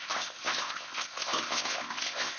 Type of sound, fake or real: fake